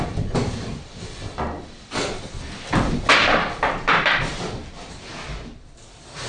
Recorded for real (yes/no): yes